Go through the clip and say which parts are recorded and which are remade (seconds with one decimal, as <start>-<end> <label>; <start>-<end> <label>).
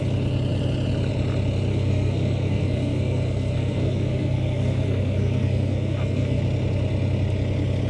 0.0-1.7 recorded; 1.7-6.4 remade; 6.4-7.9 recorded